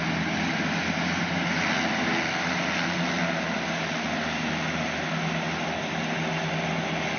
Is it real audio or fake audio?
real